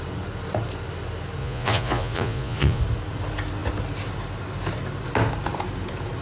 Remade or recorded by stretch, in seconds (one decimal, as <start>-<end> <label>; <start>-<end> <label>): 0.0-1.4 recorded; 1.4-2.8 remade; 2.8-6.2 recorded